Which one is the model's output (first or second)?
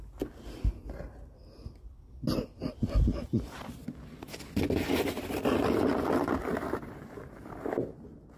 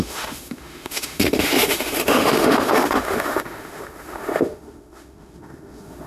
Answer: second